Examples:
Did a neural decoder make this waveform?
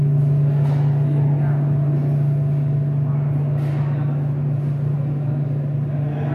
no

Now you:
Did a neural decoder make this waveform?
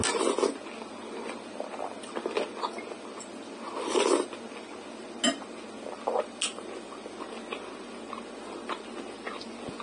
no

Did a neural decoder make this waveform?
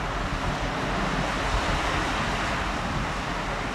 no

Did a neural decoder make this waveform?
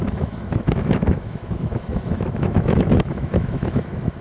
yes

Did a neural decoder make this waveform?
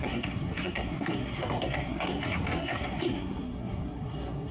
yes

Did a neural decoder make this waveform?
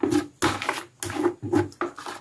no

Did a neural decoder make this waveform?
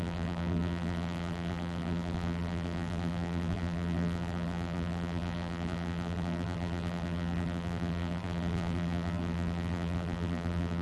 yes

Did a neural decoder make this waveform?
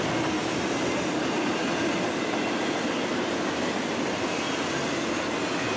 no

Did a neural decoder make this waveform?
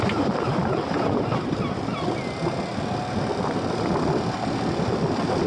no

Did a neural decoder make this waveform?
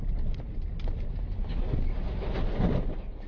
no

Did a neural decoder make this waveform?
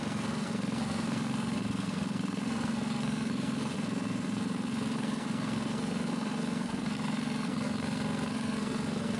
yes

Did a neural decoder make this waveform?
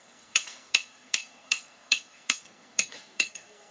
yes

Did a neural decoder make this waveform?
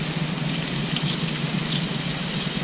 no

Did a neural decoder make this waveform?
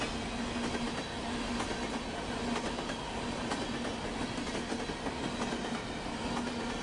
no